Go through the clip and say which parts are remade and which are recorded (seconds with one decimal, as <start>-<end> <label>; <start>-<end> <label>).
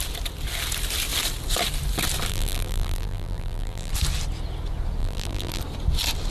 0.0-2.3 recorded; 2.3-3.9 remade; 3.9-5.0 recorded; 5.0-5.6 remade; 5.6-6.3 recorded